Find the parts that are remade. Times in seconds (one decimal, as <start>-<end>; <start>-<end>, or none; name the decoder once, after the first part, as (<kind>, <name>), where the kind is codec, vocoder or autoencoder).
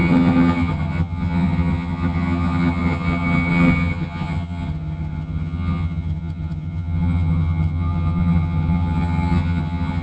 0.0-10.0 (vocoder, HiFi-GAN)